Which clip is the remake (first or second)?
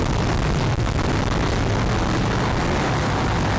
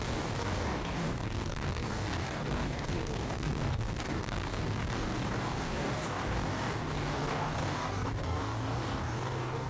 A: second